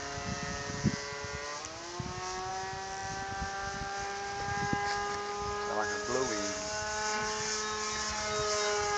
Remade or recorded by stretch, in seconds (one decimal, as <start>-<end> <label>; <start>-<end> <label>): 0.0-9.0 recorded